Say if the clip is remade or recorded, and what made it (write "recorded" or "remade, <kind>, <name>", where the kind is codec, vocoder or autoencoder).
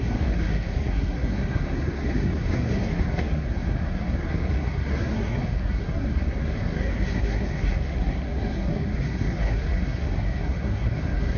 remade, codec, SNAC